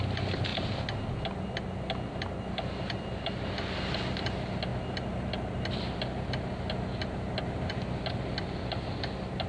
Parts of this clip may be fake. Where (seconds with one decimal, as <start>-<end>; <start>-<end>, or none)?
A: none